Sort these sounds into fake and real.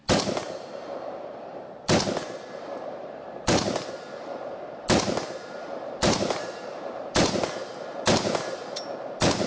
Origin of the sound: fake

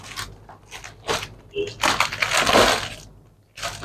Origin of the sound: real